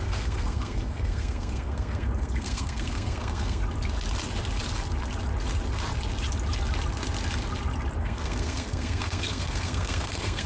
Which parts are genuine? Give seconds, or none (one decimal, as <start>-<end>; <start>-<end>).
3.6-8.0